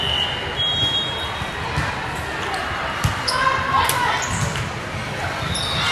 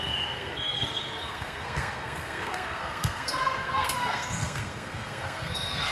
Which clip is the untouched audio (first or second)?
first